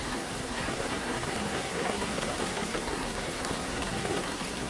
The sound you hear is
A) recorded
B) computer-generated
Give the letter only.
B